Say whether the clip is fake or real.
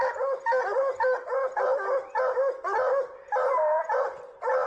real